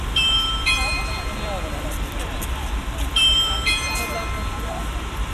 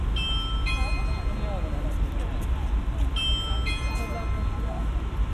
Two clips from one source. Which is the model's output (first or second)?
first